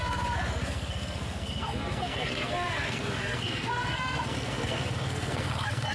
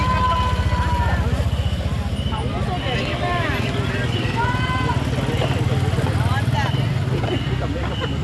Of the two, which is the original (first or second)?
second